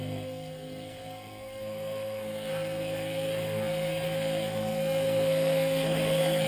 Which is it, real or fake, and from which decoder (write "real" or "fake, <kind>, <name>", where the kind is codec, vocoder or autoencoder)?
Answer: fake, codec, SNAC